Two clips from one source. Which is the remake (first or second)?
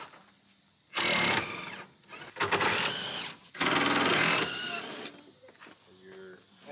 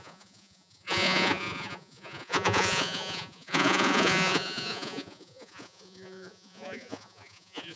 second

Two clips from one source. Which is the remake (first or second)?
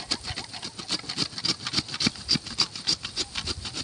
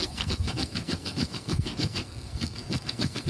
second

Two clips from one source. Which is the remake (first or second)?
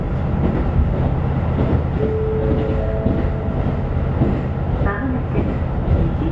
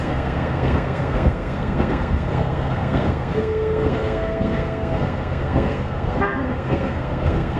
second